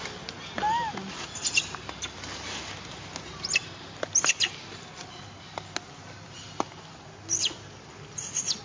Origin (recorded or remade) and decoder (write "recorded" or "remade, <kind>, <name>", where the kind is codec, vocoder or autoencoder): recorded